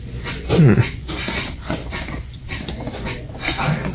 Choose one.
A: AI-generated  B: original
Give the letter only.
A